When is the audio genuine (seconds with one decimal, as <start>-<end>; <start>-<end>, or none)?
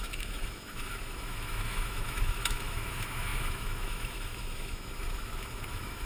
none